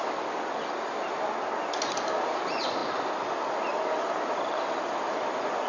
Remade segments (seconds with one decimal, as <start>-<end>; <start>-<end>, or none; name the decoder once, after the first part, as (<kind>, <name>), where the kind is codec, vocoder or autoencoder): none